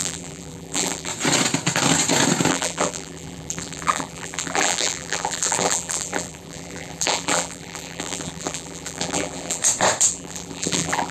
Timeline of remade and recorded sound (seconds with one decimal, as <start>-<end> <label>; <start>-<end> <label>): 0.0-1.1 remade; 1.1-2.5 recorded; 2.5-9.6 remade; 9.6-10.1 recorded; 10.1-11.1 remade